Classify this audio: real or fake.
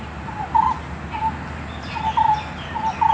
real